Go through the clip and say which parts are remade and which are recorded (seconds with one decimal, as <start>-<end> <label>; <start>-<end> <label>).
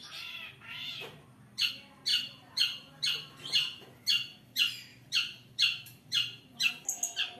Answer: 0.0-0.8 recorded; 0.8-1.7 remade; 1.7-2.1 recorded; 2.1-3.9 remade; 3.9-4.9 recorded; 4.9-6.7 remade; 6.7-7.4 recorded